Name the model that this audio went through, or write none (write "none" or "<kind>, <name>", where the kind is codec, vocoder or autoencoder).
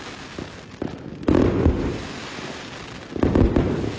none